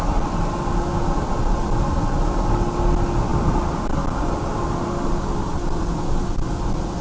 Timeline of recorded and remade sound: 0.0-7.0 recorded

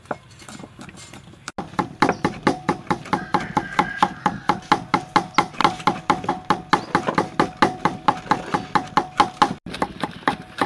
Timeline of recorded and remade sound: 0.0-10.7 recorded

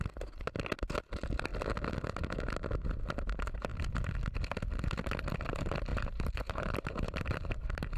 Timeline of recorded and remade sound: 0.0-5.9 recorded; 5.9-8.0 remade

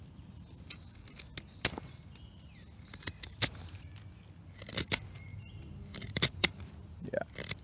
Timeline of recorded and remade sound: 0.0-5.3 recorded; 5.3-7.0 remade; 7.0-7.6 recorded

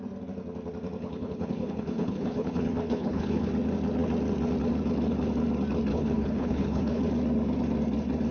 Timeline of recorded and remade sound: 0.0-1.0 recorded; 1.0-3.5 remade; 3.5-5.9 recorded; 5.9-7.0 remade; 7.0-8.3 recorded

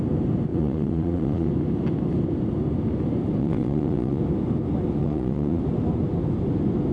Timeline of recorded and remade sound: 0.0-0.5 recorded; 0.5-1.5 remade; 1.5-3.4 recorded; 3.4-4.2 remade; 4.2-5.0 recorded; 5.0-5.6 remade; 5.6-6.9 recorded